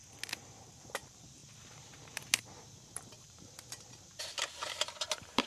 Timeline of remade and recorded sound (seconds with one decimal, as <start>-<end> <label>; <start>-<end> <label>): 0.0-0.6 recorded; 0.6-1.4 remade; 1.4-2.6 recorded; 2.6-4.6 remade; 4.6-5.1 recorded; 5.1-5.5 remade